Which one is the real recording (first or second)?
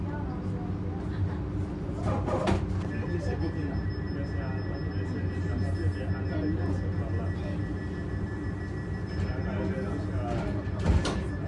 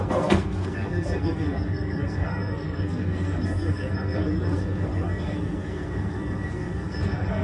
first